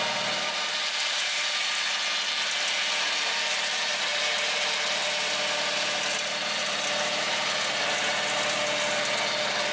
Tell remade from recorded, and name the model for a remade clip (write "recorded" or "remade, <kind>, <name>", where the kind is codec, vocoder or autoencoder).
recorded